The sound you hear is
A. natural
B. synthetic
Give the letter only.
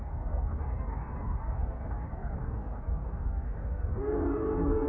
B